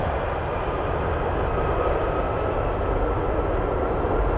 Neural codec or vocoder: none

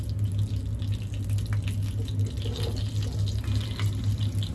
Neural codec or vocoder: none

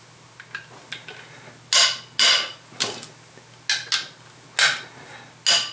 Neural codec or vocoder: none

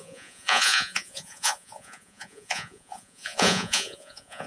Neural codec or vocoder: vocoder, Vocos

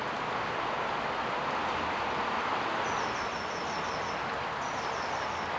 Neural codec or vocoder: none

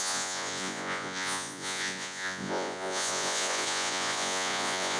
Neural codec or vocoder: vocoder, Vocos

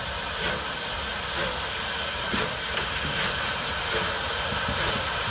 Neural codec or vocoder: none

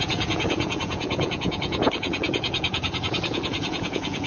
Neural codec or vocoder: vocoder, Vocos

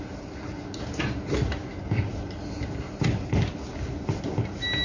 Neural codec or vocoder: none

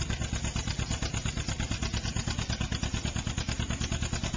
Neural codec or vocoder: none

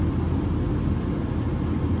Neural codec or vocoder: none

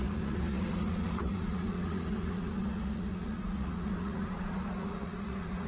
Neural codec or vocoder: vocoder, Vocos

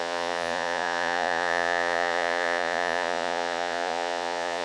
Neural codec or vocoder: vocoder, Vocos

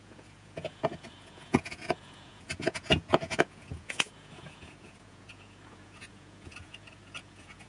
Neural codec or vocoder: vocoder, Vocos